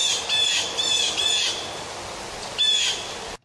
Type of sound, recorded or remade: recorded